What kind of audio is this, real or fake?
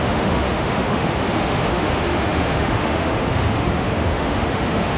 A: fake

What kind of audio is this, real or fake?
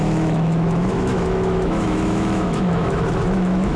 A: fake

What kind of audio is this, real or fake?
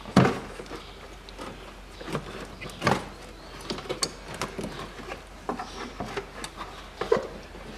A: real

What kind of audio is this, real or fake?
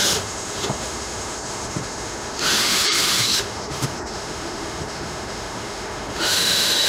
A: fake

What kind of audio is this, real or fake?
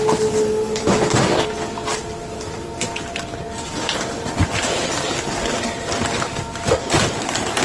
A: real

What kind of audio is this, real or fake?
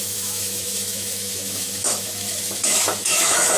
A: fake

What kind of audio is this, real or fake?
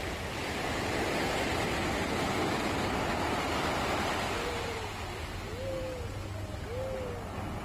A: real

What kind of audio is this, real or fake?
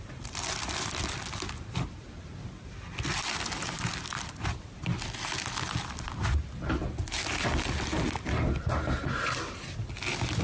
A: real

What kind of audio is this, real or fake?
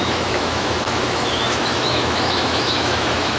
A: fake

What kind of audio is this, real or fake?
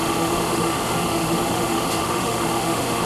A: fake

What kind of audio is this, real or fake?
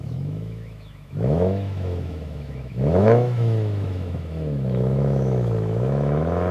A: fake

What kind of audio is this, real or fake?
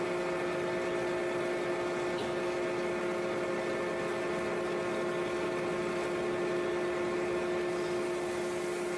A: real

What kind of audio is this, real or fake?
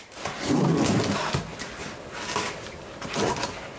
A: real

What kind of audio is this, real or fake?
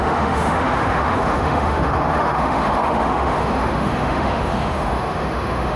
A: fake